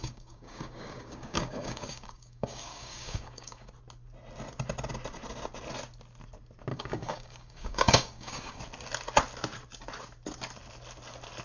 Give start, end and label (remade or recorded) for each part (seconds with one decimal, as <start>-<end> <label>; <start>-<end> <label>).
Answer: 0.0-3.7 remade; 3.7-6.7 recorded; 6.7-8.6 remade; 8.6-11.4 recorded